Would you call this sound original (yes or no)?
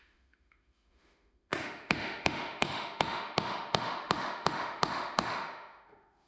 no